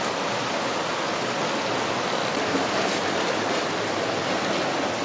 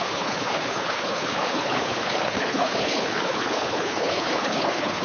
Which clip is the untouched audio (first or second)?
first